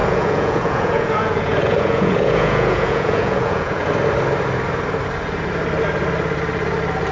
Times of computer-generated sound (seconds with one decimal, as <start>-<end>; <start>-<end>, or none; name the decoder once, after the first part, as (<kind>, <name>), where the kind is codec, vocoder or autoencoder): 0.0-3.9 (vocoder, Vocos)